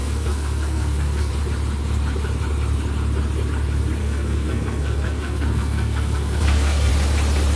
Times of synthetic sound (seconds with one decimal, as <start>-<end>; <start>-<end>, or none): 0.0-1.3; 4.0-6.9